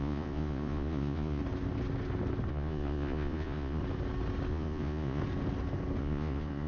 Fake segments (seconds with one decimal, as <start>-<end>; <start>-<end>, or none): 0.0-1.4; 2.5-3.8; 4.5-5.2; 6.0-6.7